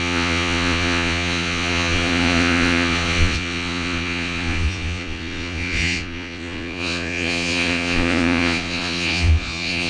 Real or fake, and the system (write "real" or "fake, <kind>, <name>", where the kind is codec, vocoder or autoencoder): fake, vocoder, Vocos